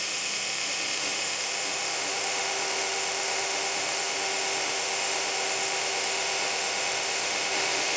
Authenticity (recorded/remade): remade